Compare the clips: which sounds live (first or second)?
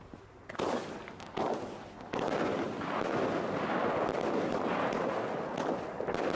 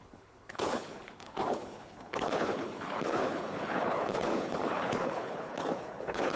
first